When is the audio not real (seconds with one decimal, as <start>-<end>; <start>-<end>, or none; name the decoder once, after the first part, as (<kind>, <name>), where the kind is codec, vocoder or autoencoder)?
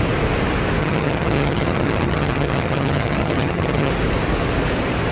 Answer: 0.8-3.9 (vocoder, HiFi-GAN)